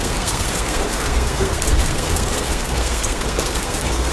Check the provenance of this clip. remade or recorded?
remade